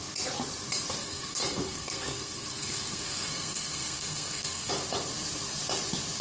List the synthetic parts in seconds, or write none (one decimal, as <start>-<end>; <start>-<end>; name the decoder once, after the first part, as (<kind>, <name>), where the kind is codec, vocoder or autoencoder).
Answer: 1.0-4.7 (codec, SNAC)